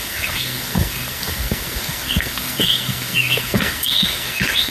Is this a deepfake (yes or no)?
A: yes